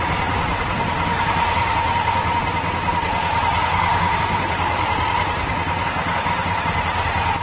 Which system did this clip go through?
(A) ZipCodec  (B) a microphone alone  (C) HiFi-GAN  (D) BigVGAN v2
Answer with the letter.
B